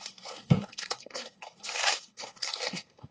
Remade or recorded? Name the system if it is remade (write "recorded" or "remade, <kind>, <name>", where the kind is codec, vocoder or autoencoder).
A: remade, codec, SNAC